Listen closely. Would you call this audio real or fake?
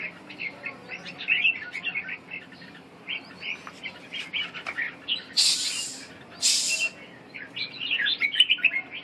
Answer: real